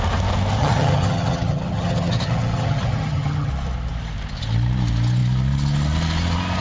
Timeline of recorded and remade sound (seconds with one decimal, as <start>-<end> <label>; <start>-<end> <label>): 0.0-0.6 recorded; 0.6-3.5 remade; 3.5-6.6 recorded